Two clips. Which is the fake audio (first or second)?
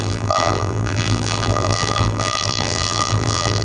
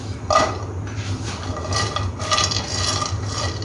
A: first